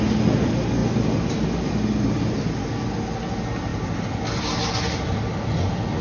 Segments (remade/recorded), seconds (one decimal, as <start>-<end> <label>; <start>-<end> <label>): 0.0-6.0 recorded